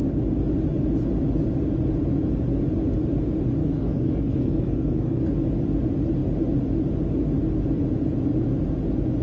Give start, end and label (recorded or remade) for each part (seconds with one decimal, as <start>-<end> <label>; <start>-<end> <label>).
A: 0.0-3.6 recorded; 3.6-5.2 remade; 5.2-9.2 recorded